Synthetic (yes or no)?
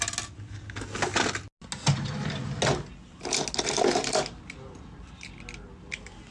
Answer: no